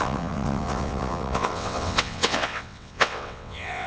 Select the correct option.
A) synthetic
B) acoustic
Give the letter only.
A